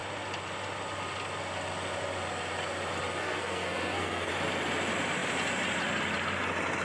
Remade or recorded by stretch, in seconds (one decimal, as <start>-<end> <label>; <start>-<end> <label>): 0.0-3.2 recorded; 3.2-4.3 remade; 4.3-6.8 recorded